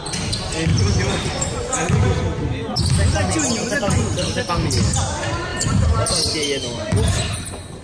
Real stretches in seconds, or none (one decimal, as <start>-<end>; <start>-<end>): 0.0-0.7; 1.9-5.5; 6.3-7.8